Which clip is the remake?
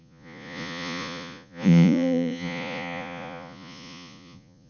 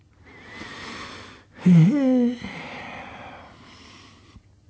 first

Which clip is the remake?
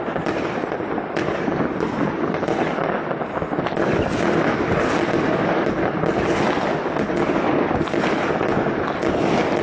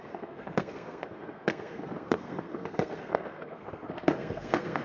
second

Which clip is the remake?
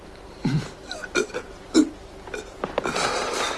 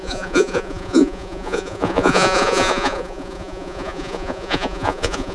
second